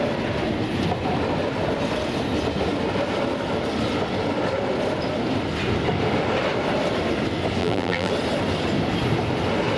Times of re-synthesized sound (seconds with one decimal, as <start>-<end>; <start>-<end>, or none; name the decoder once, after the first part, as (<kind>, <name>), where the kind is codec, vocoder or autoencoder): 7.6-8.1 (vocoder, BigVGAN v2)